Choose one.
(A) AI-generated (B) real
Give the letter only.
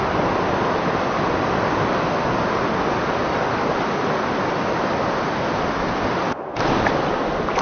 B